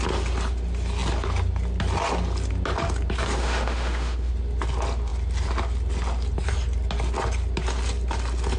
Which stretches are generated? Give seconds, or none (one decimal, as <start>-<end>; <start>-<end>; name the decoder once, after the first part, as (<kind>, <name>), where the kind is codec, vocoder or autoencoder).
3.4-4.3 (autoencoder, DAC-VAE)